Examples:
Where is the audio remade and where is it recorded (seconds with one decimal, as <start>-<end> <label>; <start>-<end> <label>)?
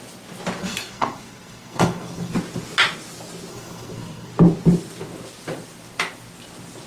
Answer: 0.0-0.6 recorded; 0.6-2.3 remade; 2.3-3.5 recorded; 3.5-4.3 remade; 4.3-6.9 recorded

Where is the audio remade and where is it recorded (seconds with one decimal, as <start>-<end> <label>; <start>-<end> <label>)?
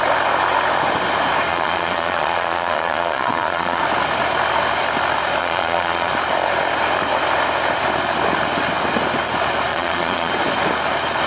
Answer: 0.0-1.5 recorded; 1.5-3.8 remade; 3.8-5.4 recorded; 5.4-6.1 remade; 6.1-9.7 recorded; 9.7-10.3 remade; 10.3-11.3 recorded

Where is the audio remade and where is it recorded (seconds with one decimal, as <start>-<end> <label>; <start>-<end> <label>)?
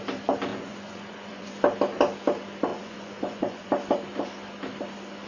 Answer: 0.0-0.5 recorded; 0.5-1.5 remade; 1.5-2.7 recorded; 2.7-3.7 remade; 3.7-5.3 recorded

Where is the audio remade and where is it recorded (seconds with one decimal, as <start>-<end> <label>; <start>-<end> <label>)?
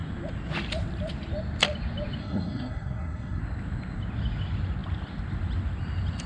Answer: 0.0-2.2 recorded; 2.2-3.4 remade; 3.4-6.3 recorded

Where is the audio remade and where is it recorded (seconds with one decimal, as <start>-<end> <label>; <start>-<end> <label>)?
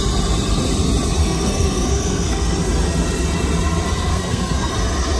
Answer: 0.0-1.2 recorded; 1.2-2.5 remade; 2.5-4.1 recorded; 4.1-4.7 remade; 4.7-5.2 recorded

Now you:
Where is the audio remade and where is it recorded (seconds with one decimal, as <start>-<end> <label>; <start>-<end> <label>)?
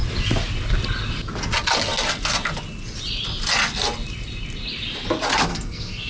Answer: 0.0-5.5 recorded; 5.5-6.1 remade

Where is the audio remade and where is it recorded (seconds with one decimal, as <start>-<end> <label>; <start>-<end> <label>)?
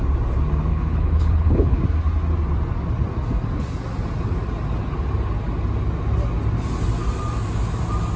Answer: 0.0-0.7 recorded; 0.7-1.8 remade; 1.8-8.2 recorded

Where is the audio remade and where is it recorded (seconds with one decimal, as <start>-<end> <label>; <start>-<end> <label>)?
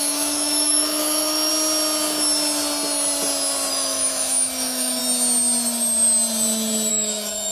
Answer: 0.0-1.5 remade; 1.5-3.7 recorded; 3.7-5.0 remade; 5.0-6.9 recorded; 6.9-7.5 remade